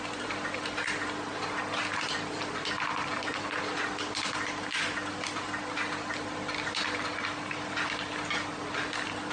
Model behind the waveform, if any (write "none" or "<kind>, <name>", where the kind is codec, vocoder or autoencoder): none